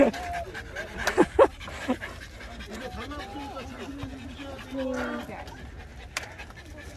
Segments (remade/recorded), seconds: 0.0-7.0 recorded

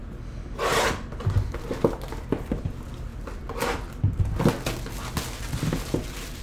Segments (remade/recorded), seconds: 0.0-6.4 recorded

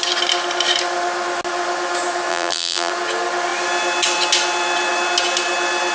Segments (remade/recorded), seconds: 0.0-2.3 recorded; 2.3-2.9 remade; 2.9-5.9 recorded

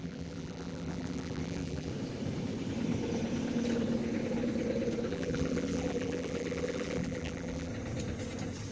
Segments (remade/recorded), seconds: 0.0-1.9 remade; 1.9-5.1 recorded; 5.1-7.7 remade; 7.7-8.7 recorded

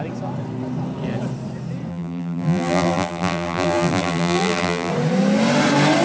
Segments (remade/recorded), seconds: 0.0-1.9 recorded; 1.9-4.9 remade; 4.9-6.0 recorded